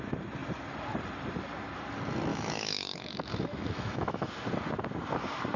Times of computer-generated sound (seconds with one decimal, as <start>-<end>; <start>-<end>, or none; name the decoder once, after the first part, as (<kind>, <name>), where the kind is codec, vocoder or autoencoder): 2.3-4.3 (autoencoder, DAC-VAE)